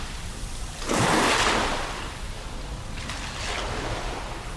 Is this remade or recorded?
recorded